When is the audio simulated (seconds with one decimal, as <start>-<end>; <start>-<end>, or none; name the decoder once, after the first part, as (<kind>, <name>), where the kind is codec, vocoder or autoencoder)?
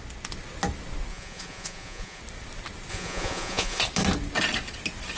1.1-2.2 (vocoder, Vocos); 2.9-3.8